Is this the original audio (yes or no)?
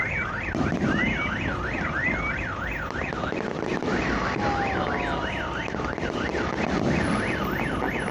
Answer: yes